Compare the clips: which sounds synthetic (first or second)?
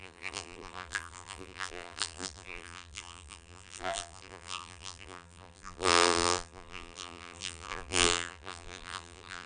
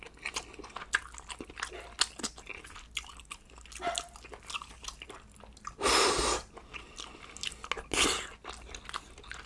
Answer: first